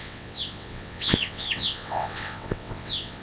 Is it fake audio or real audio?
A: fake